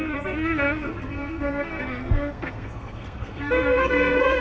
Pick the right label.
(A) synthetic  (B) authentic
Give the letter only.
A